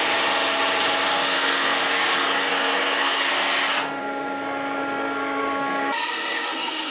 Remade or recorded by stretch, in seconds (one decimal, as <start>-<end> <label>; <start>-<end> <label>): 0.0-1.1 recorded; 1.1-1.8 remade; 1.8-2.5 recorded; 2.5-3.3 remade; 3.3-4.0 recorded; 4.0-6.9 remade